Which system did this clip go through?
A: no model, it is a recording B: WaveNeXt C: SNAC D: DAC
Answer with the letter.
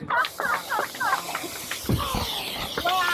A